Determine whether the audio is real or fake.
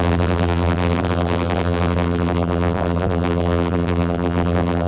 fake